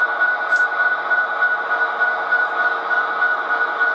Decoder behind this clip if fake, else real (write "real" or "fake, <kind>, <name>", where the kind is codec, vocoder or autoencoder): real